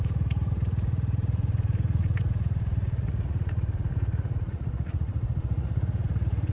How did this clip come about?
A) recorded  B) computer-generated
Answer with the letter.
B